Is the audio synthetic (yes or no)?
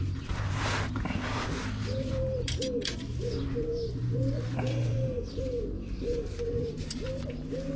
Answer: yes